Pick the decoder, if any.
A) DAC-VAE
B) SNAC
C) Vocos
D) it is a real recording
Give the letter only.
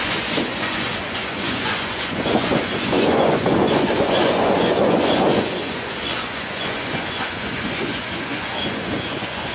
C